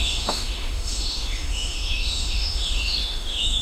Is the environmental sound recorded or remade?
remade